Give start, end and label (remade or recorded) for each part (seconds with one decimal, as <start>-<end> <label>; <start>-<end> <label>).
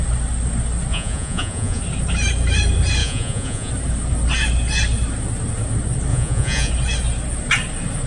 0.0-0.9 recorded; 0.9-1.8 remade; 1.8-3.0 recorded; 3.0-3.7 remade; 3.7-6.1 recorded; 6.1-6.7 remade; 6.7-8.1 recorded